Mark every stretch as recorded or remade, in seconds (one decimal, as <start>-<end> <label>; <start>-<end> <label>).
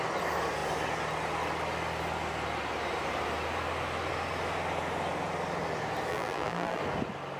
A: 0.0-6.1 recorded; 6.1-6.8 remade; 6.8-7.4 recorded